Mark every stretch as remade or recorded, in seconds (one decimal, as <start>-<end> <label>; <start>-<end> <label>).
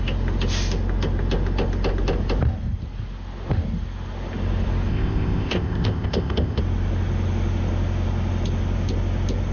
0.0-4.9 recorded; 4.9-6.6 remade; 6.6-9.5 recorded